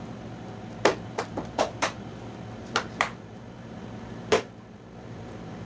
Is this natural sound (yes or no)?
no